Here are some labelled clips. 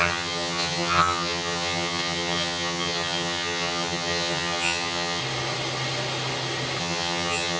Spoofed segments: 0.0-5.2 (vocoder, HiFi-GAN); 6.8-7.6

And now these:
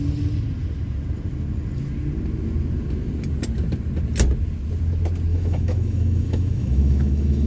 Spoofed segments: 5.3-7.5 (autoencoder, DAC-VAE)

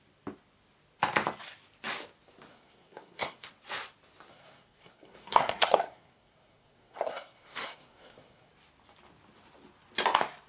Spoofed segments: 2.5-3.5 (codec, SNAC); 4.3-8.5

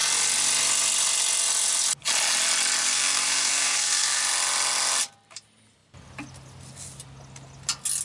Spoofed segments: 2.8-4.2 (codec, SNAC)

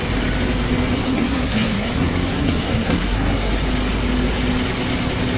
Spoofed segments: 1.1-3.5 (codec, SNAC)